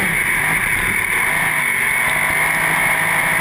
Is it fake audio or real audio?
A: real